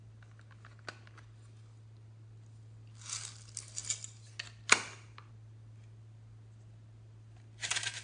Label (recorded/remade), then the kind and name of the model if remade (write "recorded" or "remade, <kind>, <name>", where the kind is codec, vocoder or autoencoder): recorded